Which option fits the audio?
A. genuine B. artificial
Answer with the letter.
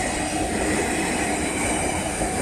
A